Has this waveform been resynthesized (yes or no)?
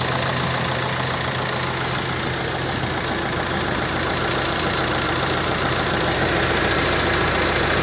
no